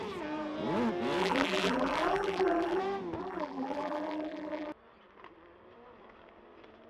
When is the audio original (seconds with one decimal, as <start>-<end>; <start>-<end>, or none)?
0.0-1.2; 2.8-3.2; 4.7-6.9